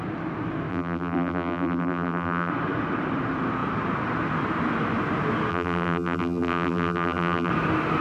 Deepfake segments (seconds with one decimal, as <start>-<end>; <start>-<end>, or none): 0.7-2.5; 5.5-7.5